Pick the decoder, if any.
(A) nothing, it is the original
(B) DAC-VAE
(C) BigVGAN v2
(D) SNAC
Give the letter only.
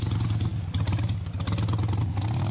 A